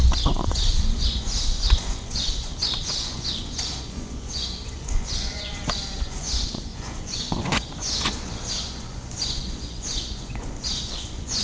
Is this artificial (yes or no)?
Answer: yes